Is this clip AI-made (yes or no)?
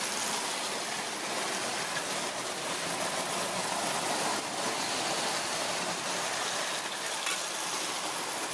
no